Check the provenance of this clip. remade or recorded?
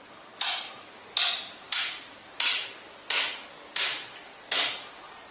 recorded